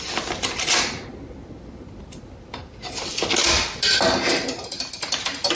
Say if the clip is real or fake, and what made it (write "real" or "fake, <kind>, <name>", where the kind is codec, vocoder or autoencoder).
real